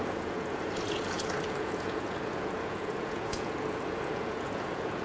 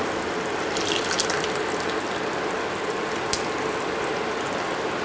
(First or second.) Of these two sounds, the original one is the second